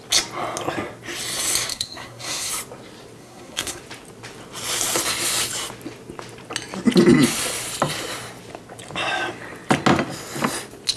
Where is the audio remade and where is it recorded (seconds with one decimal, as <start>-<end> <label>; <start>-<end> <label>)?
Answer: 0.0-1.7 recorded; 1.7-2.5 remade; 2.5-3.2 recorded; 3.2-3.8 remade; 3.8-11.0 recorded